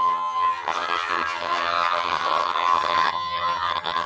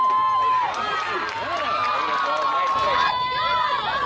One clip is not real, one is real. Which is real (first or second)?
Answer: second